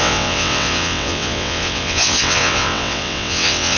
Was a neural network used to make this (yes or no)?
yes